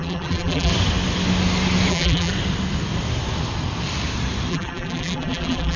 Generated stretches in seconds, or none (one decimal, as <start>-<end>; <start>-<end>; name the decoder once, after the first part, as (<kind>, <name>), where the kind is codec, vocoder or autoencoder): 0.0-0.7 (vocoder, BigVGAN v2); 1.9-2.3; 4.5-5.8